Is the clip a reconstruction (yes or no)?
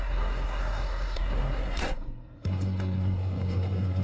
yes